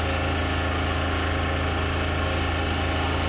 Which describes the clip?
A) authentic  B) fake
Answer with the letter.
A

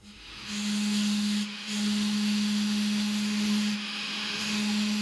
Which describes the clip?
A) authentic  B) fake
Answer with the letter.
B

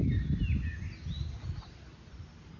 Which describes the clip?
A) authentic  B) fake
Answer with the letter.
A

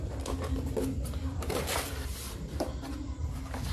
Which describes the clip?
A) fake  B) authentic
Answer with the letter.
A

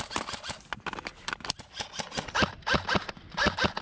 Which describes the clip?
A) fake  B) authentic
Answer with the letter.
B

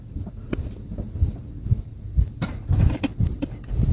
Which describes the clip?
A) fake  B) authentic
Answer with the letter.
A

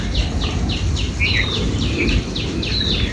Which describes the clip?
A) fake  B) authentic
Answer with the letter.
B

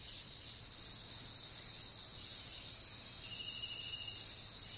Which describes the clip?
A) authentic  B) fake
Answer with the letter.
A